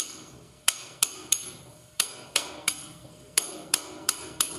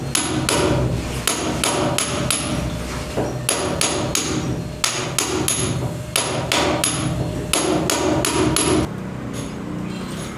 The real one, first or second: second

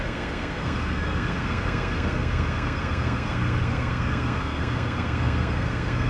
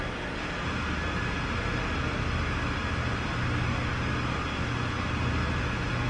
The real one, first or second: second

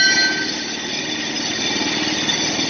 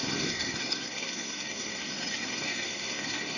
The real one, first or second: first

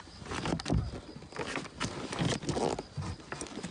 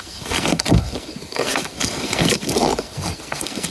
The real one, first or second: first